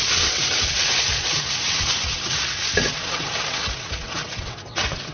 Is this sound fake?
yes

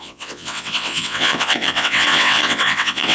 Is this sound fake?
yes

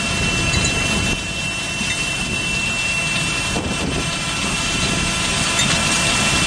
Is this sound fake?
no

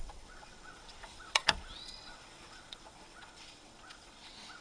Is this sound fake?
yes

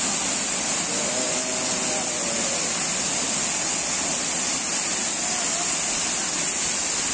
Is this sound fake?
no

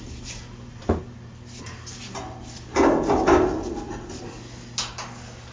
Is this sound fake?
no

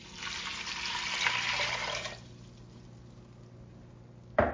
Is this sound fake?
no